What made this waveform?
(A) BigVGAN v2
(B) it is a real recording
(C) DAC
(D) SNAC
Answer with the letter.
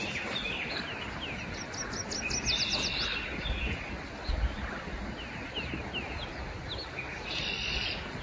B